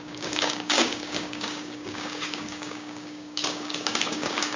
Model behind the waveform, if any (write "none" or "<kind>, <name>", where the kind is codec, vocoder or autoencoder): codec, DAC